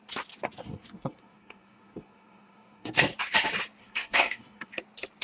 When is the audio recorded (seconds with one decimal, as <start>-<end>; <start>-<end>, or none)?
0.0-0.6; 3.0-3.8; 4.7-5.2